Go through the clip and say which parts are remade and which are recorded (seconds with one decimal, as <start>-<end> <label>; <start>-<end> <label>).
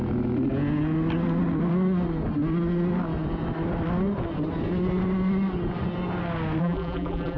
0.0-6.6 recorded; 6.6-7.4 remade